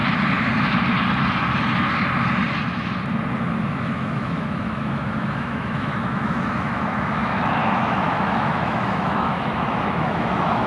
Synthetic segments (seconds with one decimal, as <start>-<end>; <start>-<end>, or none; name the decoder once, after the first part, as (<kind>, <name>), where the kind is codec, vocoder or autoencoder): 3.7-10.7 (autoencoder, DAC-VAE)